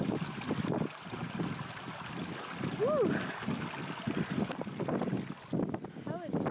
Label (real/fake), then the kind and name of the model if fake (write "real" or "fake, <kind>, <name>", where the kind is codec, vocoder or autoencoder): real